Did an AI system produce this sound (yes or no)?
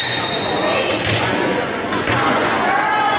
yes